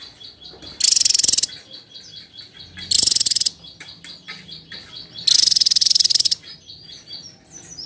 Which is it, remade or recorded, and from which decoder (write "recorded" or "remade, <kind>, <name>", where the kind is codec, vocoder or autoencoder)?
recorded